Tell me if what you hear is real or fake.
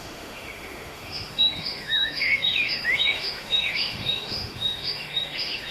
fake